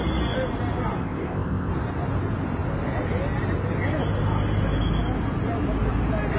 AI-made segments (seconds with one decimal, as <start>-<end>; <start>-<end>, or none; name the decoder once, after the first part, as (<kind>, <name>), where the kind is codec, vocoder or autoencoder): 1.0-1.7 (codec, ZipCodec)